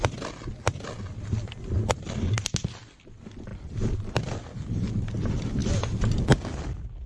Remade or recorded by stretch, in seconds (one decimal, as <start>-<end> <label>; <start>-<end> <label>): 0.0-3.5 recorded; 3.5-4.2 remade; 4.2-7.1 recorded